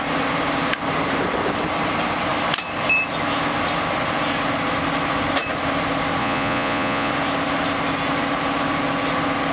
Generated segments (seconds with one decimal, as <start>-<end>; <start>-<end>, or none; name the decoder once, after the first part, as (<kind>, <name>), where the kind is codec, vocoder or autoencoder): 6.2-7.1 (vocoder, Vocos)